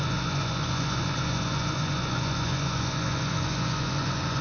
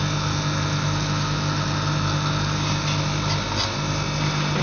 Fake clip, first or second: first